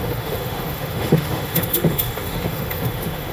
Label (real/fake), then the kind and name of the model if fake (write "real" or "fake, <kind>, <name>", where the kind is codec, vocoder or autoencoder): fake, autoencoder, DAC-VAE